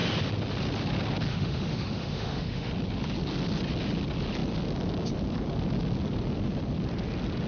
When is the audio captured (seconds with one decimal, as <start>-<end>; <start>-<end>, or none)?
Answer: 0.0-1.3; 2.7-7.5